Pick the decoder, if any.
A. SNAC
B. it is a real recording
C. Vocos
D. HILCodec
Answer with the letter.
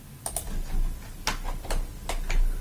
B